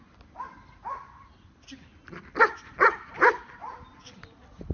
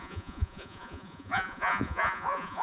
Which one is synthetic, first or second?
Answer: second